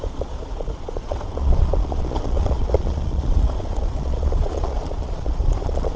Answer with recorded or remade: remade